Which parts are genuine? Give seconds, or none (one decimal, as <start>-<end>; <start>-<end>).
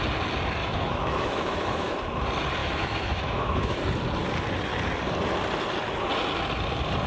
0.0-0.6; 1.9-2.6; 3.8-7.1